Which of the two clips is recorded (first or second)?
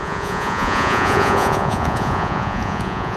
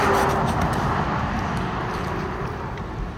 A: second